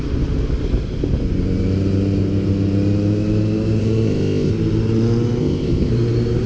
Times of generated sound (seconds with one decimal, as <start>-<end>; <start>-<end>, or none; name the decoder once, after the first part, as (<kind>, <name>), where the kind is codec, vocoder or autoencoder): 3.8-4.5 (codec, ZipCodec); 5.4-5.9